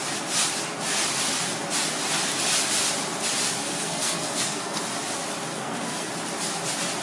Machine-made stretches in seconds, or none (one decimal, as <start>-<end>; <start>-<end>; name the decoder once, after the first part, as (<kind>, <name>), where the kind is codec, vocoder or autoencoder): 3.6-4.8 (codec, SNAC); 5.5-6.1